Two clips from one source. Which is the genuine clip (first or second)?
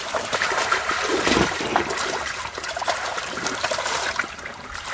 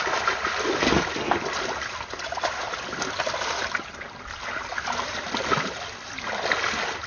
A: second